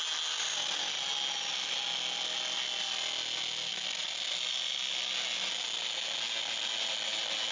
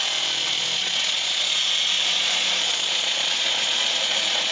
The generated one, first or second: second